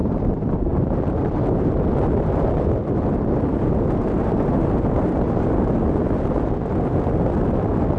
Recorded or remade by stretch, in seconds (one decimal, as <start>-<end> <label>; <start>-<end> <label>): 0.0-1.7 remade; 1.7-3.5 recorded; 3.5-5.7 remade; 5.7-8.0 recorded